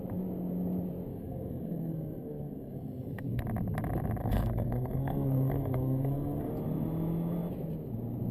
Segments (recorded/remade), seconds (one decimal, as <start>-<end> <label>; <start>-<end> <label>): 0.0-1.1 recorded; 1.1-3.4 remade; 3.4-4.2 recorded; 4.2-6.5 remade; 6.5-8.3 recorded